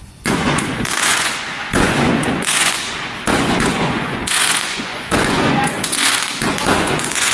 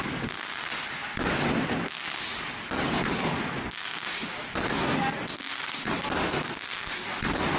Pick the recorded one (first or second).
second